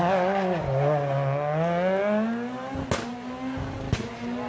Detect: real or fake real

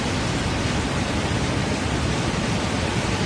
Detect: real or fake real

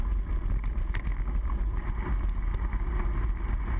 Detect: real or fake real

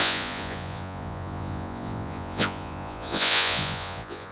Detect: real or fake fake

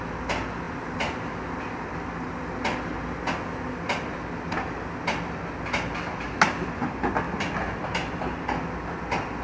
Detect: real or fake real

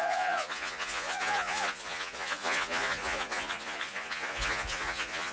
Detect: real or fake fake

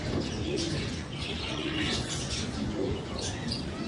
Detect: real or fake fake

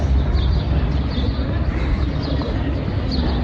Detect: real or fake real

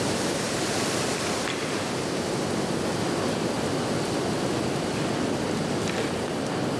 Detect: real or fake real